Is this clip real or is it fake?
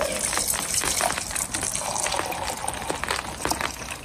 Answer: real